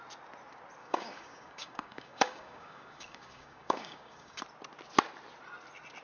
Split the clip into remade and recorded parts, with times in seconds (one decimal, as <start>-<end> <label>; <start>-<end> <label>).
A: 0.0-0.8 recorded; 0.8-4.4 remade; 4.4-6.0 recorded